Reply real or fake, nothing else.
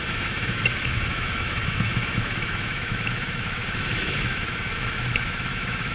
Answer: fake